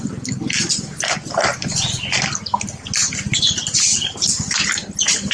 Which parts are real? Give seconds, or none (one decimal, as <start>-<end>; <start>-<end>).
0.0-5.3